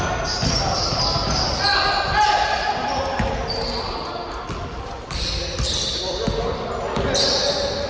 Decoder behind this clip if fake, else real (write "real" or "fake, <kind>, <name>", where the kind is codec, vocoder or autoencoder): real